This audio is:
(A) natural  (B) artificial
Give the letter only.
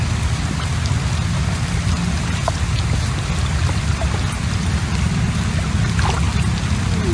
A